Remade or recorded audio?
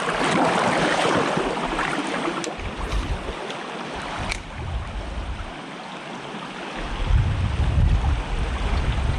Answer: recorded